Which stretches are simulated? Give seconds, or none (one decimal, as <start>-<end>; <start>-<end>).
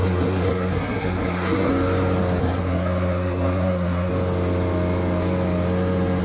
0.0-1.7; 2.4-4.1